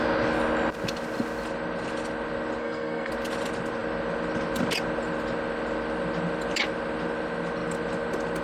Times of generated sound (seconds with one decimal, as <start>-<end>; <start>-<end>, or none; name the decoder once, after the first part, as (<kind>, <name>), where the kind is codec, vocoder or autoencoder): 2.6-3.1 (codec, SNAC)